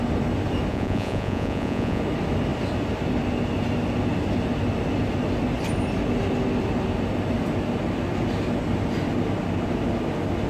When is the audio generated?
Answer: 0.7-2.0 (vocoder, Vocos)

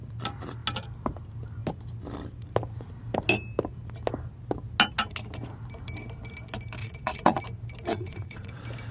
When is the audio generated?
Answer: 6.8-7.4 (vocoder, Vocos); 7.9-8.5

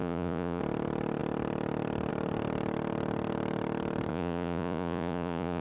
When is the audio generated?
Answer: 0.0-0.6 (vocoder, Vocos); 4.1-5.6

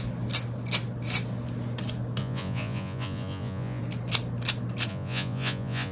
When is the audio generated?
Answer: 2.2-3.8 (vocoder, Vocos); 4.9-5.9

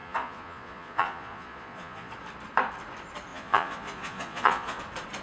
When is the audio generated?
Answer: 0.0-2.1 (vocoder, Vocos); 3.3-4.8